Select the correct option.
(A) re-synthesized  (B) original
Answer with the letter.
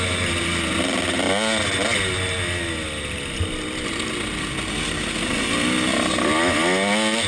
B